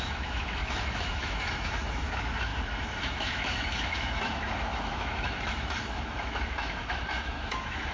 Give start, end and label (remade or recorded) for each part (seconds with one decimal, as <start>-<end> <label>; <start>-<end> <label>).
0.0-7.9 remade